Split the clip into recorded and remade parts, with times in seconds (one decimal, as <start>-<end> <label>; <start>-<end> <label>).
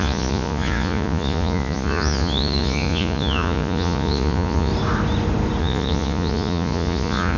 0.0-4.7 remade; 4.7-5.6 recorded; 5.6-7.4 remade